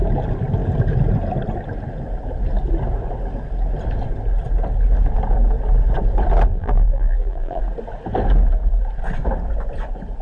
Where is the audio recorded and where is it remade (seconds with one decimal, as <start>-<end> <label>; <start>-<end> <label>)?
0.0-6.5 recorded; 6.5-7.6 remade; 7.6-10.2 recorded